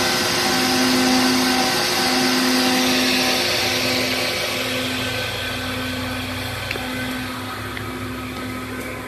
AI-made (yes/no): no